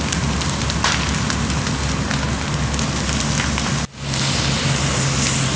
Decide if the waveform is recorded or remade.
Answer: recorded